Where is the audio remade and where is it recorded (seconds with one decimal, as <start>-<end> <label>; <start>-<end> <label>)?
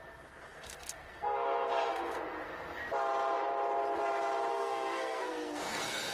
0.0-2.8 remade; 2.8-4.5 recorded; 4.5-6.1 remade